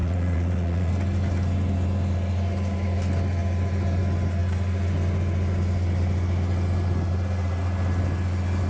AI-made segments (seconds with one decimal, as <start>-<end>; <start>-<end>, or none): 0.0-0.9